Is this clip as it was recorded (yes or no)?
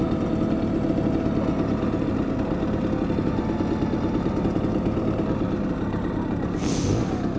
yes